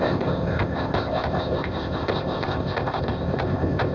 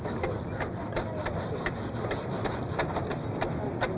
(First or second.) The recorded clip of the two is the second